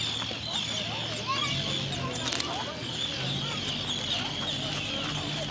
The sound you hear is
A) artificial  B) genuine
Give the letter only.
B